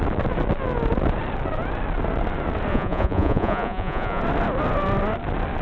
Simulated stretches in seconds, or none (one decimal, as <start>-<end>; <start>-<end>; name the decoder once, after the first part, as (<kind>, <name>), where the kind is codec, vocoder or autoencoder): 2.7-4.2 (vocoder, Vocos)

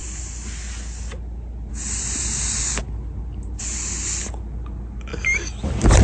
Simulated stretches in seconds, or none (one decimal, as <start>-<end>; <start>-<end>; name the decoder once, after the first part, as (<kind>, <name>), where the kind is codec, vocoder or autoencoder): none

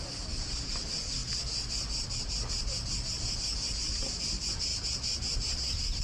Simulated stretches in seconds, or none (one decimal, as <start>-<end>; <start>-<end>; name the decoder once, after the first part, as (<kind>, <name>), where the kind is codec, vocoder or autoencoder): none

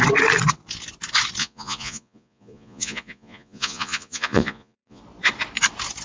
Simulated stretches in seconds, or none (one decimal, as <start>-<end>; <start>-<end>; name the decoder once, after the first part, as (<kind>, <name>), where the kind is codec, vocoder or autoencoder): 1.4-5.0 (vocoder, Vocos)

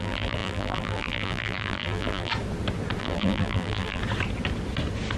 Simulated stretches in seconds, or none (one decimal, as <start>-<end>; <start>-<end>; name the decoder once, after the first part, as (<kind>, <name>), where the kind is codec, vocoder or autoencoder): 0.0-2.3 (vocoder, BigVGAN v2); 3.0-4.0

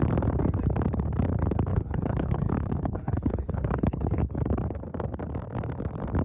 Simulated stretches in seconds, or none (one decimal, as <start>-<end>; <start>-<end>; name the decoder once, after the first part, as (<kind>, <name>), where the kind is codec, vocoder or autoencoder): 1.7-4.2 (codec, HILCodec)

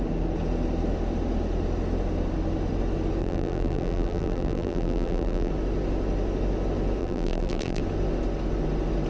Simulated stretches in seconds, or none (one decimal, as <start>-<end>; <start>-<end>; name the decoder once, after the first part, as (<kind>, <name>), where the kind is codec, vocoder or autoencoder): 3.2-5.5 (vocoder, BigVGAN v2); 7.0-7.8

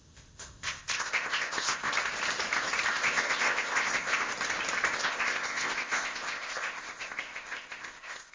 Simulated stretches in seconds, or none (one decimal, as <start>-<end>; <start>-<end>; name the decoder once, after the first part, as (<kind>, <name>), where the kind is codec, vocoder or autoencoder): 0.0-1.9 (codec, ZipCodec); 2.9-4.3; 4.9-8.3